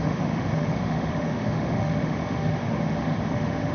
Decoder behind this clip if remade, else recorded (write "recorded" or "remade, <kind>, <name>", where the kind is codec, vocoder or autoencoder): remade, autoencoder, DAC-VAE